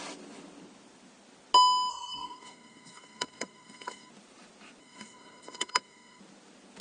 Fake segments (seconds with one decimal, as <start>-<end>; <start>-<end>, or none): 1.9-4.1; 4.8-6.2